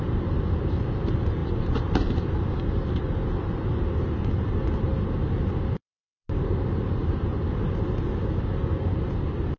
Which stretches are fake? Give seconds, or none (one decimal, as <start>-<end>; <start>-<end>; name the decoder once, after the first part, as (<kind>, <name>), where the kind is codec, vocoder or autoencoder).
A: none